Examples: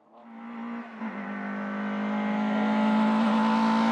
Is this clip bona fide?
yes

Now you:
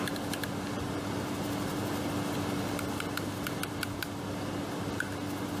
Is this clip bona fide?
yes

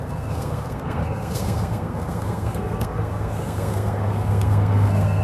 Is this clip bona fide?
no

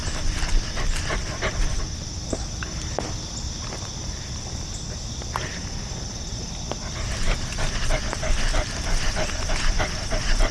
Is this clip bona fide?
yes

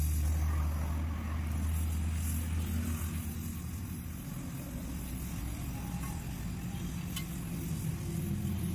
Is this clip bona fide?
yes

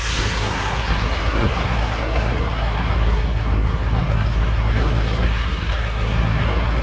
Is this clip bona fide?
no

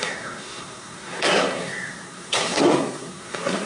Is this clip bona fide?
no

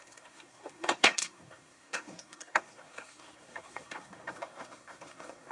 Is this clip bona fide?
no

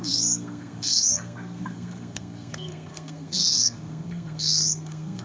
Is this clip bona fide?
no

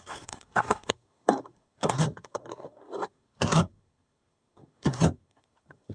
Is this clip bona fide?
no